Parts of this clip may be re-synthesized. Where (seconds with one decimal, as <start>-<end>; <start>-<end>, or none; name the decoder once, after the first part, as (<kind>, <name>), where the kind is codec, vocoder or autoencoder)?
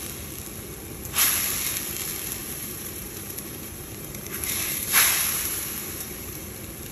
2.4-6.5 (vocoder, BigVGAN v2)